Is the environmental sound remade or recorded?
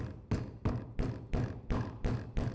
recorded